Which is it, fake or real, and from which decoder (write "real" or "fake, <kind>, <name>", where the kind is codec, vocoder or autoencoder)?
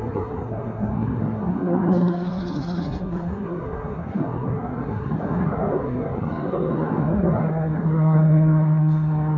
fake, codec, SNAC